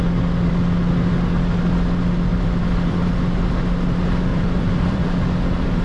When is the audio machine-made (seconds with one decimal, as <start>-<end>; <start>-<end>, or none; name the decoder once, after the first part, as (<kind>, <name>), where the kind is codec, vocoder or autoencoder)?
2.3-3.1 (vocoder, BigVGAN v2); 4.3-5.0